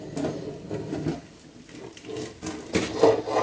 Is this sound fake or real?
real